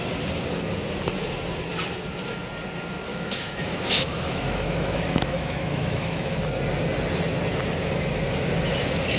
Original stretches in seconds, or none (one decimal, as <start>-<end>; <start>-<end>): 0.0-3.1; 6.4-9.2